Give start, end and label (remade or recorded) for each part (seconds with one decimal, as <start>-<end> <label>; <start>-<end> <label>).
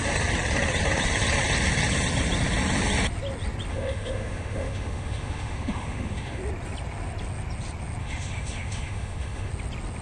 0.0-3.7 recorded; 3.7-6.4 remade; 6.4-8.0 recorded; 8.0-9.5 remade; 9.5-10.0 recorded